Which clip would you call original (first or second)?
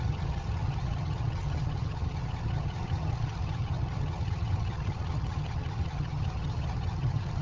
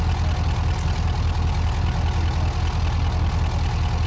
second